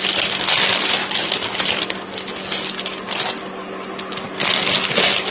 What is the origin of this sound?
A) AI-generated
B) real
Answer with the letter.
B